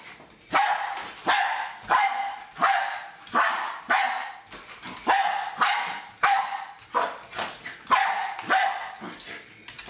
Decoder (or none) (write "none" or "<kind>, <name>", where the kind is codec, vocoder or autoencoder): none